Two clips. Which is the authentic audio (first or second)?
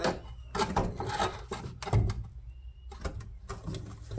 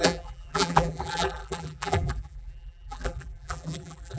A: first